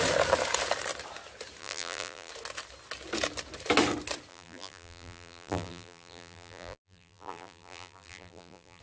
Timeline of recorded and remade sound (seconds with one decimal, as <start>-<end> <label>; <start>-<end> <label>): 0.0-1.6 recorded; 1.6-2.3 remade; 2.3-4.3 recorded; 4.3-8.8 remade